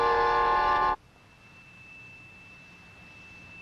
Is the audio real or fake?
real